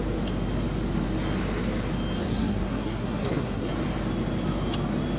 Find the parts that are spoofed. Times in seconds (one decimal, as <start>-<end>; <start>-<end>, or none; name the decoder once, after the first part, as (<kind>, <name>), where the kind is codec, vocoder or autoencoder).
2.2-3.7 (codec, SNAC)